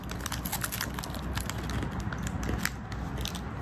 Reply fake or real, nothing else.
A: real